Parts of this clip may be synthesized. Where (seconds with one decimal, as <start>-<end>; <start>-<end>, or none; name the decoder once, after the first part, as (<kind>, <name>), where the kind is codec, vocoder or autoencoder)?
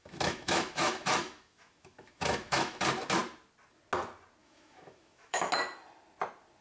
0.0-2.8 (autoencoder, DAC-VAE); 4.4-5.5